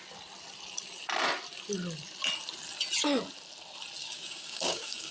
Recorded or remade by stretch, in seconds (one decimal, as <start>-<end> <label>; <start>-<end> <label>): 0.0-4.0 recorded; 4.0-5.1 remade